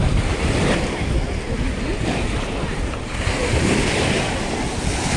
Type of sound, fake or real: real